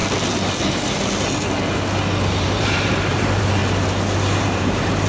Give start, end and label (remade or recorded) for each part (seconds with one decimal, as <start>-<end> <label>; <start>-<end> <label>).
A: 0.0-2.4 recorded; 2.4-3.6 remade; 3.6-4.4 recorded; 4.4-5.1 remade